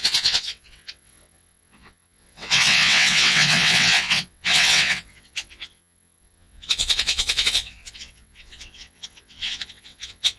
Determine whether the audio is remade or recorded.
remade